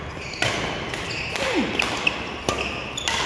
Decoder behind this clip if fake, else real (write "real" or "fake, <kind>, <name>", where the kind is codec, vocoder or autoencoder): real